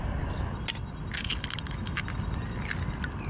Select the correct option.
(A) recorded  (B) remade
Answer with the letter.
A